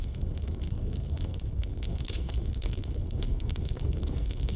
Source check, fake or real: fake